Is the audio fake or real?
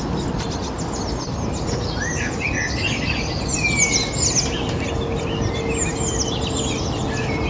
real